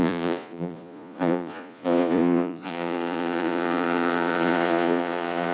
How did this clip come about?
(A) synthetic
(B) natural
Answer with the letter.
A